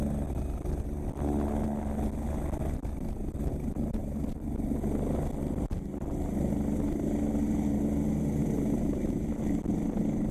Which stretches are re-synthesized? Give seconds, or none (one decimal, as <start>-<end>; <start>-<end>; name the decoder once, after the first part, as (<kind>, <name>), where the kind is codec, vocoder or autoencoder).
8.4-9.4 (vocoder, BigVGAN v2)